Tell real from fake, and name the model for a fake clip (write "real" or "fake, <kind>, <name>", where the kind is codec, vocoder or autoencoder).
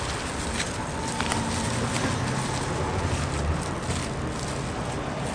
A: real